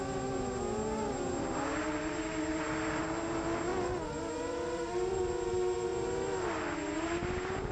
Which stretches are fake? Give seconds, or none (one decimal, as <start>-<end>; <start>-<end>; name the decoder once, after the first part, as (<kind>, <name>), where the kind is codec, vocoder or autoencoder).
3.7-5.2 (vocoder, BigVGAN v2)